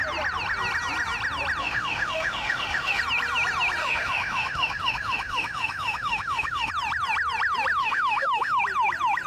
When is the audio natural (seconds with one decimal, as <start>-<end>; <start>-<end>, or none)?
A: 0.0-1.6; 3.0-3.8; 6.7-7.8; 8.6-9.3